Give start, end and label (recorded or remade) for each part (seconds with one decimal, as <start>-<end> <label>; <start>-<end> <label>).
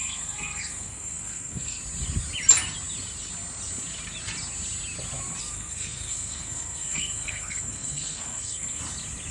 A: 0.0-1.8 remade; 1.8-5.4 recorded; 5.4-8.8 remade; 8.8-9.3 recorded